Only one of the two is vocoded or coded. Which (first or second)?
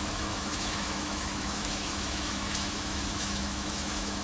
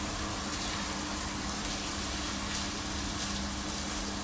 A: first